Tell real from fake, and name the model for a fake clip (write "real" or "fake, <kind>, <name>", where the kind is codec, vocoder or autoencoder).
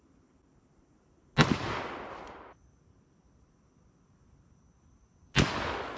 real